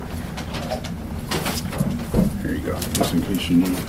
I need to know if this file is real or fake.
real